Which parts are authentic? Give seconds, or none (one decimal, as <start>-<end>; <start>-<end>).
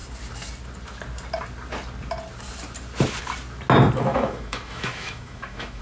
0.0-4.1